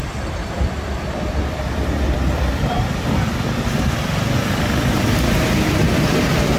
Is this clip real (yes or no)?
no